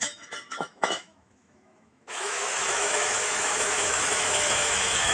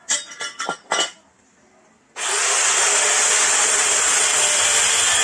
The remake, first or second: first